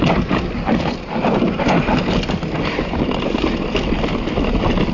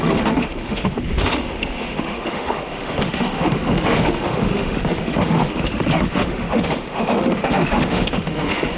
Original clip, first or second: first